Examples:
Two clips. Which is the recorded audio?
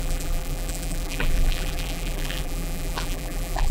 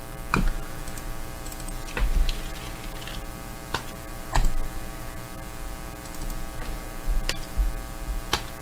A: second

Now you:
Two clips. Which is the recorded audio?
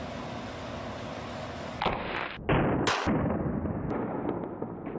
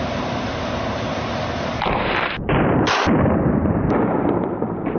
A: first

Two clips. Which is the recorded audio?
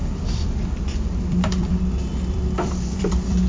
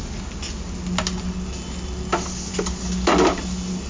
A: second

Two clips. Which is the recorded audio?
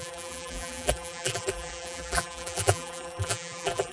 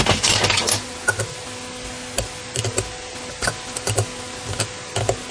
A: second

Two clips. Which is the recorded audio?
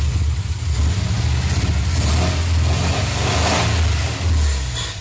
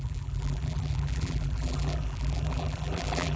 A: first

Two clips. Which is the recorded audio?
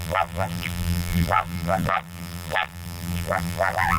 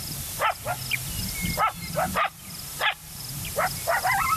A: second